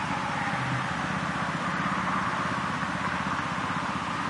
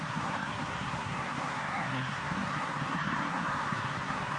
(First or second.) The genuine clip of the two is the first